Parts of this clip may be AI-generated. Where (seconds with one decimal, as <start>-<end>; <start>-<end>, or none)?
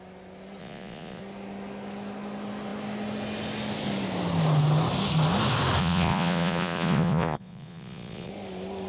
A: 0.6-1.2; 5.8-8.3